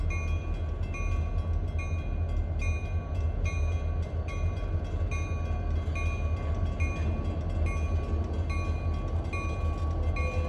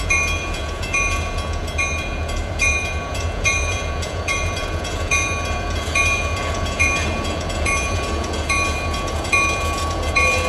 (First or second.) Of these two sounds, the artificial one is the second